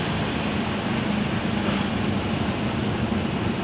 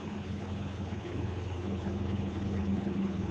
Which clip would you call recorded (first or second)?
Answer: first